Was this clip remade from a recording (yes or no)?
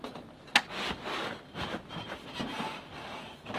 no